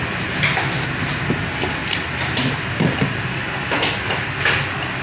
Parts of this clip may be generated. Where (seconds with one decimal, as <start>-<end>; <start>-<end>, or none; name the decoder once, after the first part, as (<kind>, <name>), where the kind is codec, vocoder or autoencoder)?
none